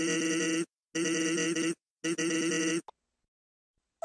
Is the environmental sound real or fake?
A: real